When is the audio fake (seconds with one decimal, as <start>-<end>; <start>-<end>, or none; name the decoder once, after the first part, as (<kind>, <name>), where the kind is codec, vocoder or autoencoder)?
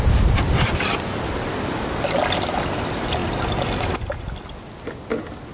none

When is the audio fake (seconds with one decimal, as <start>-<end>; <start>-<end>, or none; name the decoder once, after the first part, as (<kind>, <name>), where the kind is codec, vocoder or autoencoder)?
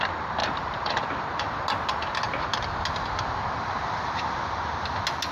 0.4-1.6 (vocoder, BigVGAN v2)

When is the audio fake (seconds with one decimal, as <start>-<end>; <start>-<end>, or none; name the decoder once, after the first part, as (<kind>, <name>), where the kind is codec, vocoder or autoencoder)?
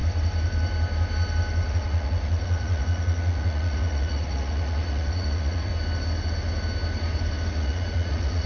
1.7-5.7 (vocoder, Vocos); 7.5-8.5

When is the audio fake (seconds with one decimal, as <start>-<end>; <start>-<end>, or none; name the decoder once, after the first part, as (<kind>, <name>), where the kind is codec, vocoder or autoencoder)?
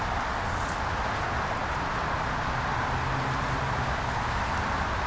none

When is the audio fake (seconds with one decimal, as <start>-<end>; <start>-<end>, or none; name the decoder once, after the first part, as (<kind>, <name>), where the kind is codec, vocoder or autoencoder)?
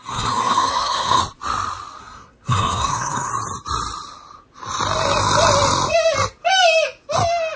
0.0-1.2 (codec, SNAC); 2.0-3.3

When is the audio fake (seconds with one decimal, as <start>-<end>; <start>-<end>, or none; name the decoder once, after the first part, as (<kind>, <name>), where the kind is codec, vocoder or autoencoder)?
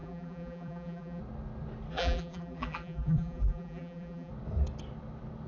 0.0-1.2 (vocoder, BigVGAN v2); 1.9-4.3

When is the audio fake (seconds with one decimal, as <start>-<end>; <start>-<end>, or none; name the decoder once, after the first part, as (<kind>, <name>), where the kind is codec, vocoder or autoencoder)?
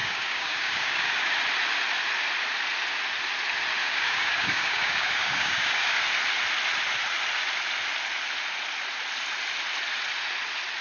0.0-1.3 (codec, DAC); 3.8-6.0